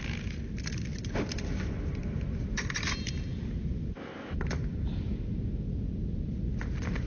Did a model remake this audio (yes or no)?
no